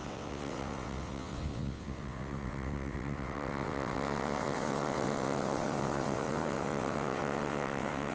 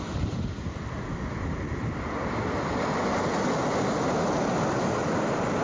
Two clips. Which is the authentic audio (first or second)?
second